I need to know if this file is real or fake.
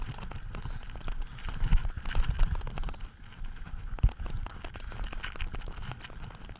real